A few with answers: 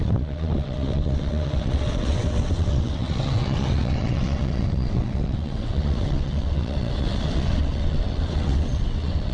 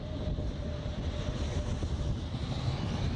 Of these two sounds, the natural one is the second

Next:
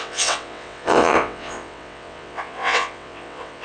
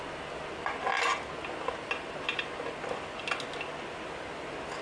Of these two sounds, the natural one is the second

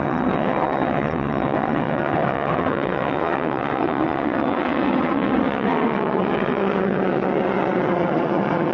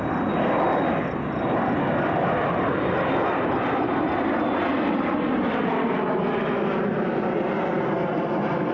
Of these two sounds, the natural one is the second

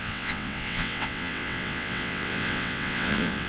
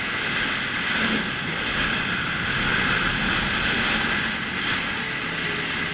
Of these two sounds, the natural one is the second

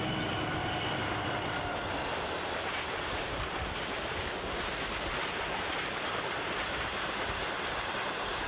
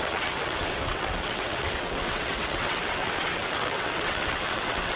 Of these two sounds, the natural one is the first